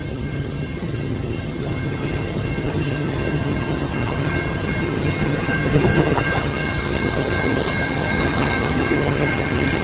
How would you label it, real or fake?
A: fake